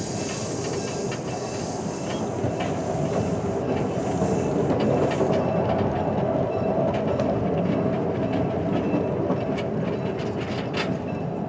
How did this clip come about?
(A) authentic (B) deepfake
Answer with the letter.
A